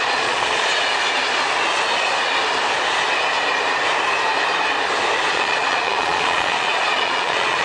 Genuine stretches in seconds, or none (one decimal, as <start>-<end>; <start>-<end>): 0.7-5.3